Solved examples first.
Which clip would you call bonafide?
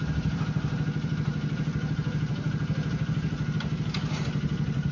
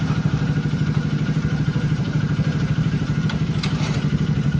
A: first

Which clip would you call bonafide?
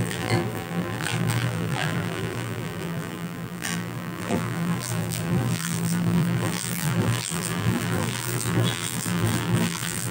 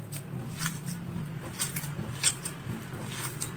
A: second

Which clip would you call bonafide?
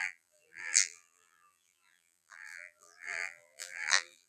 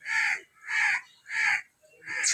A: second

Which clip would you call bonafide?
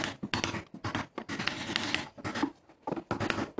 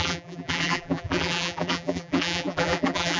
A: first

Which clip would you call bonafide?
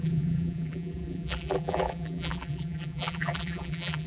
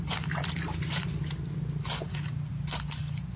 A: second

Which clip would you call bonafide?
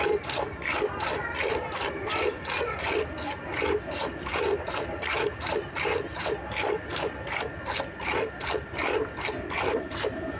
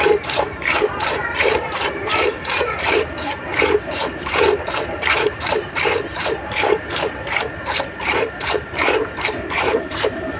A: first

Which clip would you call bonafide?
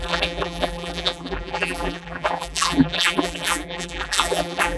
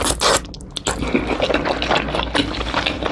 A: second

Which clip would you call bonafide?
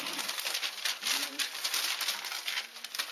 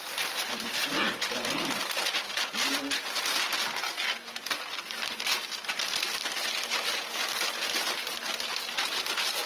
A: second